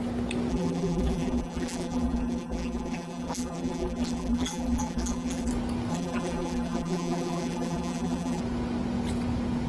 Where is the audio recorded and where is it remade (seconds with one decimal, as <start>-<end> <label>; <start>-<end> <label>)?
0.0-0.5 recorded; 0.5-5.5 remade; 5.5-5.9 recorded; 5.9-8.4 remade; 8.4-9.7 recorded